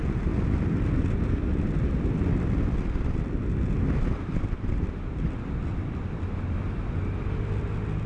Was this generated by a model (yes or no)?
no